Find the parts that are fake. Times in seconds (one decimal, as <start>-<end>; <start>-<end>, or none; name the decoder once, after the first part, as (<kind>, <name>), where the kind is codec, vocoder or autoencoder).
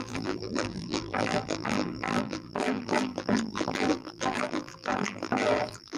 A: 0.0-6.0 (vocoder, BigVGAN v2)